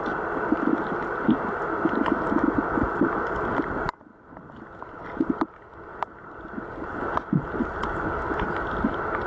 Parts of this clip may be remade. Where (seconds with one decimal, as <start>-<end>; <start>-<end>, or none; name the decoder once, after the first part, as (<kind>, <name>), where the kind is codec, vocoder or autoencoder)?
none

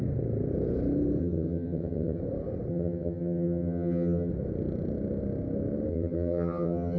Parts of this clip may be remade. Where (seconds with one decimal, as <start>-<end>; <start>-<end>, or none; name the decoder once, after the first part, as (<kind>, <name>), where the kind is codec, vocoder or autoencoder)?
1.2-2.2 (vocoder, HiFi-GAN); 2.7-4.3; 5.9-7.0